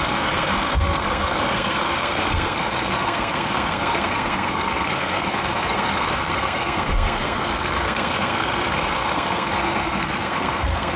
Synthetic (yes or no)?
yes